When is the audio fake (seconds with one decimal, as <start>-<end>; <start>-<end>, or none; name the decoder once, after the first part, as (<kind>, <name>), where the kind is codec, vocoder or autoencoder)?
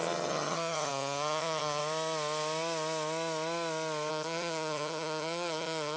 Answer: 0.0-1.8 (vocoder, HiFi-GAN); 4.1-6.0